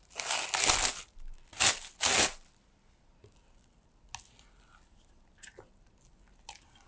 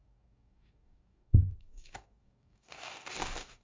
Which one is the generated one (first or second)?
second